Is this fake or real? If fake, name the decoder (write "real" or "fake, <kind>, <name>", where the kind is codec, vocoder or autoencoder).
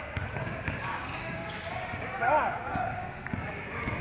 fake, codec, DAC